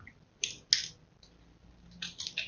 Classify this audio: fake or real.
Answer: real